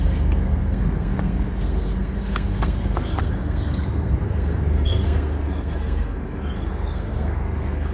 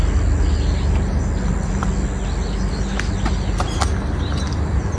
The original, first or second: second